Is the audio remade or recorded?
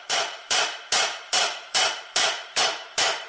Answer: remade